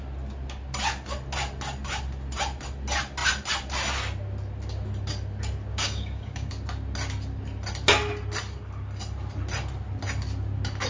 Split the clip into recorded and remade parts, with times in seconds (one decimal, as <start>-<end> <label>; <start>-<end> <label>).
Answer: 0.0-5.7 recorded; 5.7-6.5 remade; 6.5-10.9 recorded